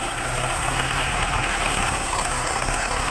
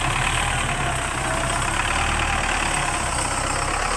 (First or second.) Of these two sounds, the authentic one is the second